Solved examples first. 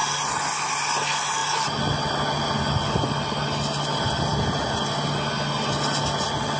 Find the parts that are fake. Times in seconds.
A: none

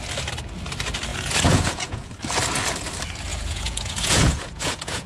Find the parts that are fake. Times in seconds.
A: 1.1-2.1; 3.3-5.1

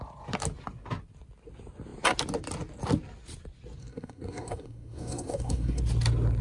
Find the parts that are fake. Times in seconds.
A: 3.8-5.8

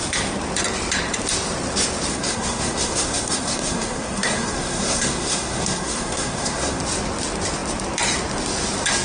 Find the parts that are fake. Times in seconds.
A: 2.1-6.8

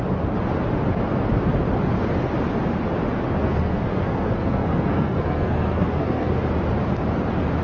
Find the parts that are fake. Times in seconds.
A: 3.4-6.3

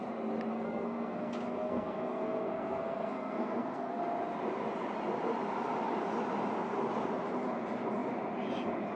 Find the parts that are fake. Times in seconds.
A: 0.5-4.0